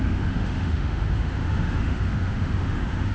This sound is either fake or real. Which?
fake